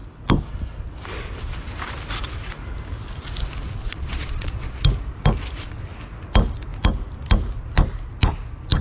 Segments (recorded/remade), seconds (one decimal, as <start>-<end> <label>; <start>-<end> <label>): 0.0-3.8 recorded; 3.8-4.8 remade; 4.8-8.8 recorded